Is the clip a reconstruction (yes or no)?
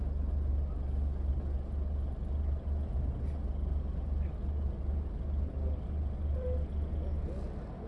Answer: no